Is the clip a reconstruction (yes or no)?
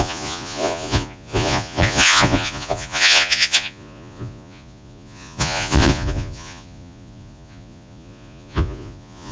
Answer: yes